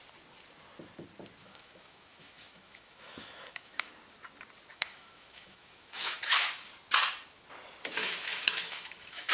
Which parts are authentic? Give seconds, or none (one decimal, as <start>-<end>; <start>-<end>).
0.0-1.4; 3.9-4.7; 6.5-8.0